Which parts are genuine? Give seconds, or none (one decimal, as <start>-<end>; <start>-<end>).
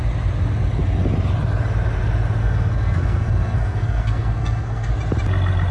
0.0-2.4; 4.9-5.7